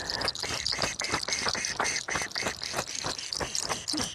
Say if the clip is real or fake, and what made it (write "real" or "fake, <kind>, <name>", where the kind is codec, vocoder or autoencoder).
real